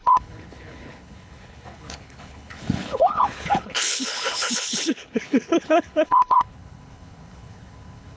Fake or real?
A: fake